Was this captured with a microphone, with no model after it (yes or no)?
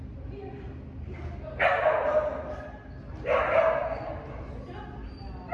yes